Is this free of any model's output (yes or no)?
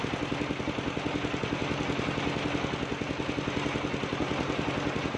yes